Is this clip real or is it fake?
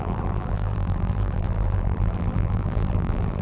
fake